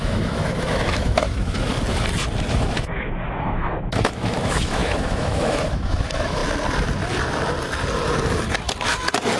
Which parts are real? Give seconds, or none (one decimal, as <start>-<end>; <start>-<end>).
1.7-2.5; 6.4-9.4